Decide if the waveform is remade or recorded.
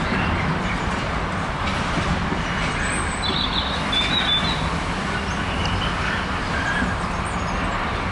recorded